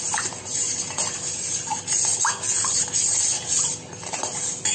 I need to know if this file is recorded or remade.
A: recorded